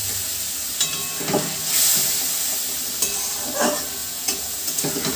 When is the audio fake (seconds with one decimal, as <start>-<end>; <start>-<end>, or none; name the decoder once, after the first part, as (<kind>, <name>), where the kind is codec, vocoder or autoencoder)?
4.0-4.8 (vocoder, Vocos)